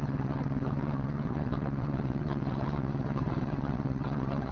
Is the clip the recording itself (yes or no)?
no